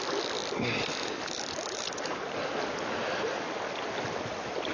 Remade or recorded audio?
recorded